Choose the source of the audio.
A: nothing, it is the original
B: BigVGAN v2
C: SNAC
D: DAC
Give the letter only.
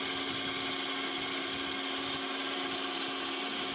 A